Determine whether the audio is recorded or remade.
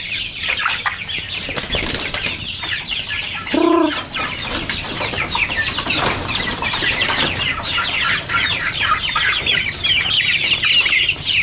remade